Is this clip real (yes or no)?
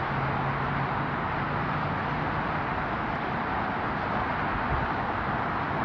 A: yes